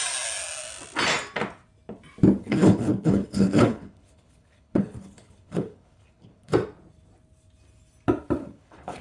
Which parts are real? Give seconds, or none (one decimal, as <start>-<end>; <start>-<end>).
0.0-2.4; 6.5-8.4